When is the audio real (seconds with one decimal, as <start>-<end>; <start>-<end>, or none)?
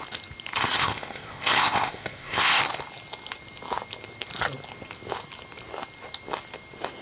0.0-0.6; 2.6-7.0